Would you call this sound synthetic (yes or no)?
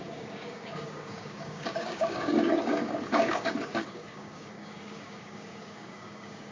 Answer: yes